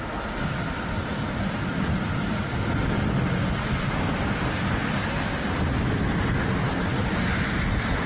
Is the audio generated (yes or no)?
no